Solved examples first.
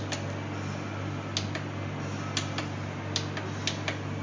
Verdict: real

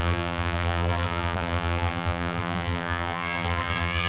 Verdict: fake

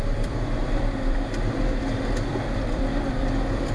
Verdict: fake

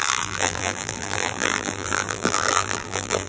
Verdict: fake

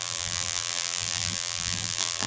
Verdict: fake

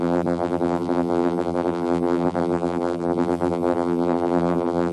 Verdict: fake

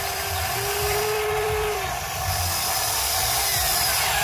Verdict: fake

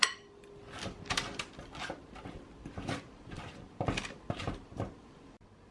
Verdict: fake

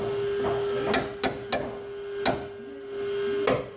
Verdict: real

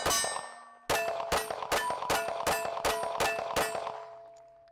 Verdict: real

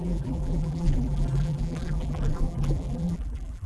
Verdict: fake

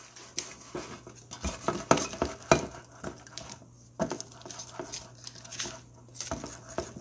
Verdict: real